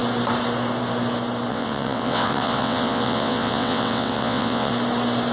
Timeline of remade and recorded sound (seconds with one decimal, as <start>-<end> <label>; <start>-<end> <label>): 0.0-1.5 recorded; 1.5-4.7 remade; 4.7-5.3 recorded